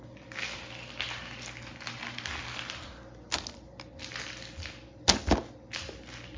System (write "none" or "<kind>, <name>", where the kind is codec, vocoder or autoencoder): none